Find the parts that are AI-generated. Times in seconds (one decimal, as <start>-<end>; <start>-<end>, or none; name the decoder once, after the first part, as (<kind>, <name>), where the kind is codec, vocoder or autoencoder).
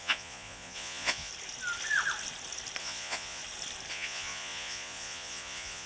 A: 0.0-1.3 (vocoder, Vocos); 2.8-3.4; 3.9-5.9